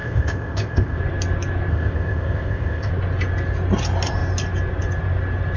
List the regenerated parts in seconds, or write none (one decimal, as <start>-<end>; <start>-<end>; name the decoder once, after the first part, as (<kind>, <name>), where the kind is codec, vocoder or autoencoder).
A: 0.0-1.0 (codec, ZipCodec); 1.7-2.9